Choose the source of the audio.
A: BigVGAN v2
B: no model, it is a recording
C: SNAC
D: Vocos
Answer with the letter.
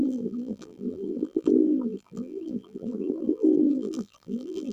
A